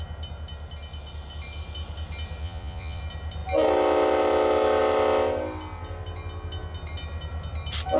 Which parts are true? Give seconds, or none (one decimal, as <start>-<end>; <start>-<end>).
0.0-2.4; 3.0-8.0